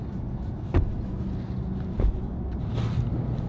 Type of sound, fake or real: real